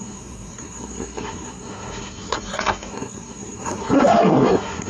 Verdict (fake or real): fake